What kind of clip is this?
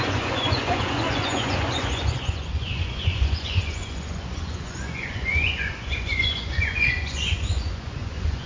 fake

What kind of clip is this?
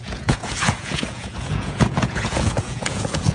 fake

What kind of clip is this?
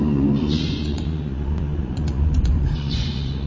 fake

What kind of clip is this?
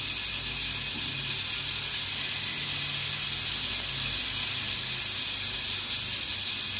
real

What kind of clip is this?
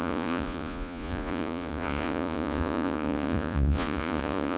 fake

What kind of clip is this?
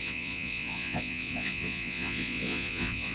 fake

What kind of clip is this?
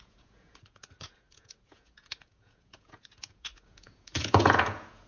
fake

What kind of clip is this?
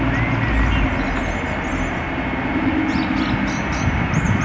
real